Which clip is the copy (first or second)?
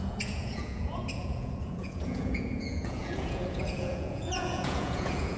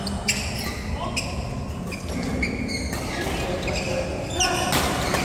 first